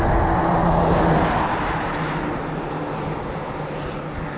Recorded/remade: recorded